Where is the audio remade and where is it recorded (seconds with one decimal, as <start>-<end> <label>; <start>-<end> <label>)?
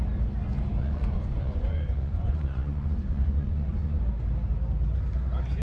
0.0-0.8 recorded; 0.8-4.0 remade; 4.0-5.6 recorded